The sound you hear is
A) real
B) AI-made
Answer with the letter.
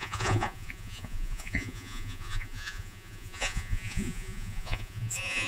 B